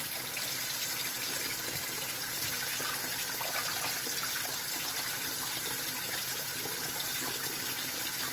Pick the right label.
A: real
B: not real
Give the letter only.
A